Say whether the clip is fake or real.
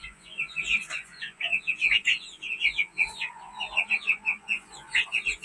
fake